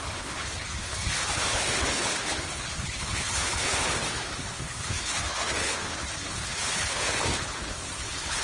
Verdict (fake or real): fake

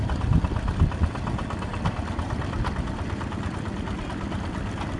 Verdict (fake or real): real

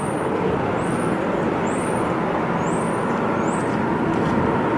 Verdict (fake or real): real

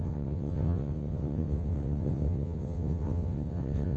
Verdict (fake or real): fake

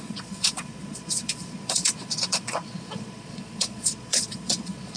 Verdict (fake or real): fake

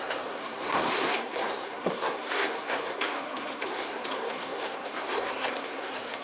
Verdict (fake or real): fake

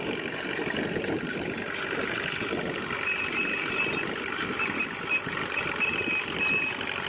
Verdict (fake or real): real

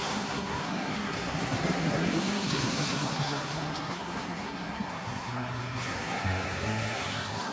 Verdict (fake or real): fake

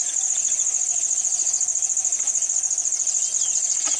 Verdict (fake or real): fake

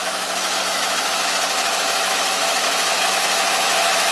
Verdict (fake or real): fake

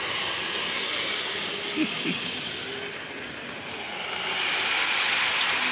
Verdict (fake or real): real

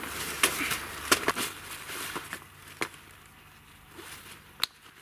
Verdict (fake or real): real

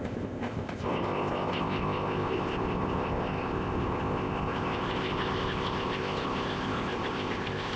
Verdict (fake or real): fake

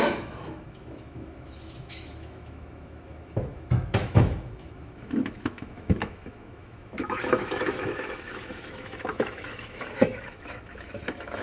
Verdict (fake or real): fake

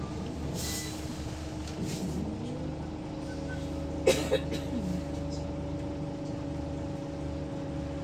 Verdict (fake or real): real